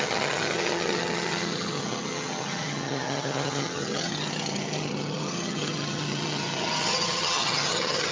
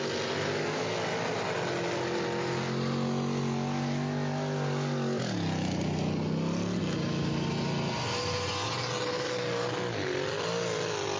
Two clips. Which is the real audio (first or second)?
second